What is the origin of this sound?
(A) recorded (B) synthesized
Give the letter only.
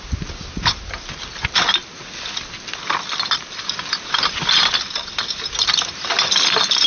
A